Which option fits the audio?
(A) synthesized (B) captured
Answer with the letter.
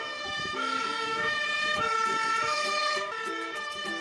A